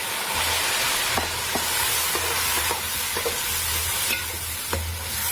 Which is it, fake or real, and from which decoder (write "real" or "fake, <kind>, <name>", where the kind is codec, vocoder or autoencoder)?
real